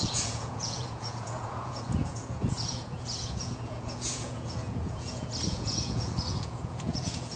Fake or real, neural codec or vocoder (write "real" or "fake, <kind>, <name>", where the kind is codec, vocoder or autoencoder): fake, vocoder, Vocos